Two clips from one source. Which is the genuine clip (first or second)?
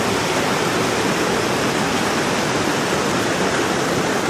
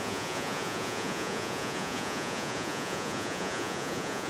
first